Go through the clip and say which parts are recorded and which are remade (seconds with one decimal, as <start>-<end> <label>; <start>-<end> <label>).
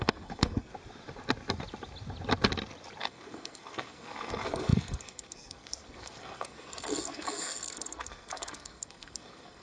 0.0-0.7 remade; 0.7-3.0 recorded; 3.0-9.6 remade